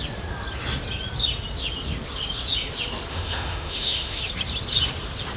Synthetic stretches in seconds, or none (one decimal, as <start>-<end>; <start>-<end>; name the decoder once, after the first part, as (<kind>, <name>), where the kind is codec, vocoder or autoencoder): 3.1-4.2 (autoencoder, DAC-VAE)